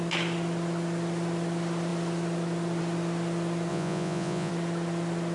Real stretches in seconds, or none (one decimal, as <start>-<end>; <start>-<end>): 0.0-3.7; 4.5-5.3